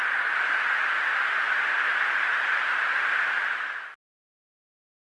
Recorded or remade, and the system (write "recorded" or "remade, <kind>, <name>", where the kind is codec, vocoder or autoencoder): recorded